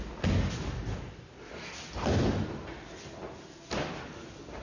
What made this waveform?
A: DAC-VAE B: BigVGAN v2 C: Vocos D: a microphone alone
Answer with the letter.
D